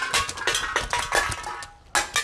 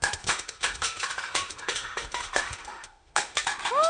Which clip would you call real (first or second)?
first